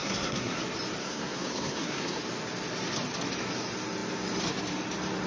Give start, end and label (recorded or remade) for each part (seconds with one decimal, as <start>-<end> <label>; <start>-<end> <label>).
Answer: 0.0-0.6 remade; 0.6-1.0 recorded; 1.0-2.2 remade; 2.2-5.3 recorded